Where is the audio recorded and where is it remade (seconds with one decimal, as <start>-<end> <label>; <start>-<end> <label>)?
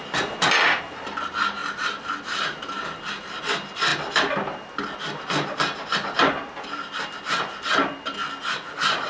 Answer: 0.0-9.1 recorded